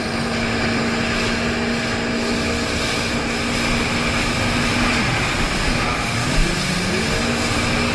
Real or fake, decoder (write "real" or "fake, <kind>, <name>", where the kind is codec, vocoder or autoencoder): real